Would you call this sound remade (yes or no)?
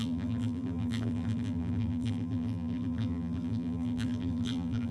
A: yes